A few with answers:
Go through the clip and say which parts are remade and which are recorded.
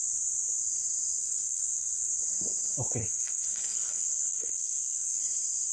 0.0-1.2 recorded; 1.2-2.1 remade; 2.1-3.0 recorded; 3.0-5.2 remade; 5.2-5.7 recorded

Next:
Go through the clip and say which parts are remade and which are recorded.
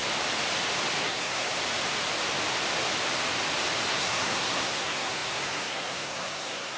0.0-1.0 recorded; 1.0-1.6 remade; 1.6-3.9 recorded; 3.9-6.8 remade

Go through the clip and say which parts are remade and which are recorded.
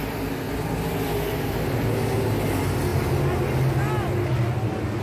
0.0-5.0 recorded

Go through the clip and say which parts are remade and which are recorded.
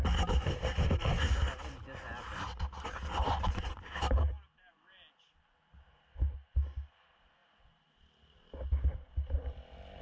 0.0-10.0 recorded